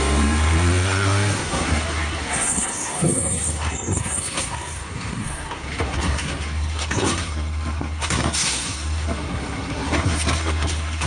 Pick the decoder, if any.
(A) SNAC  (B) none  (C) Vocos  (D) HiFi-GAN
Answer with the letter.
A